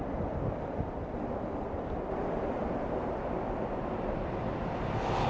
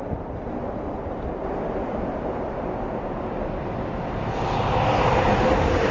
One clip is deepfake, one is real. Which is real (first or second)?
second